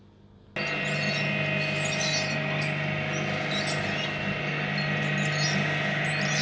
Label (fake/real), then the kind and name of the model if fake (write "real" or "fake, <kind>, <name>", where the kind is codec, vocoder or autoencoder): real